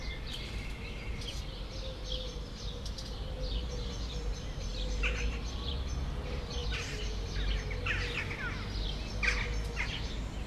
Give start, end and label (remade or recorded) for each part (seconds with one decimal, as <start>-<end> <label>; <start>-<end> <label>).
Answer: 0.0-10.5 recorded